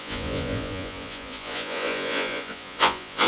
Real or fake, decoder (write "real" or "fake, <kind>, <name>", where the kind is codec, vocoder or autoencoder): fake, vocoder, Vocos